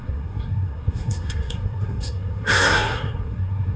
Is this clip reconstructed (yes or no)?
yes